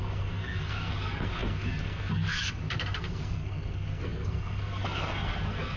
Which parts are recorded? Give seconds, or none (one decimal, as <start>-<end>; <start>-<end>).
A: none